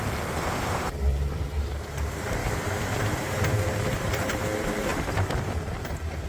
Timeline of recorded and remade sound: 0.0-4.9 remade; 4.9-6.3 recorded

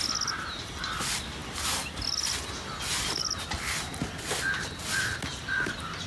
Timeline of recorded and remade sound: 0.0-6.1 recorded